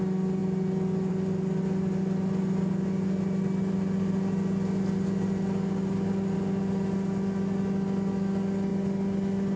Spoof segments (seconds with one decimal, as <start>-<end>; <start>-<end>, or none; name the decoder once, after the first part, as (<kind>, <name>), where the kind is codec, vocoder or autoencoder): none